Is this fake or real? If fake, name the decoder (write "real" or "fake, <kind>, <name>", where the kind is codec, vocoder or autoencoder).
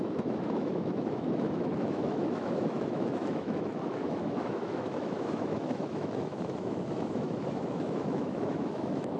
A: fake, autoencoder, DAC-VAE